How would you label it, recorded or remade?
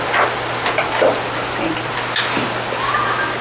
recorded